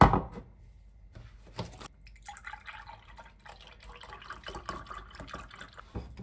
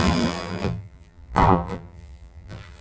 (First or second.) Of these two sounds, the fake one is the second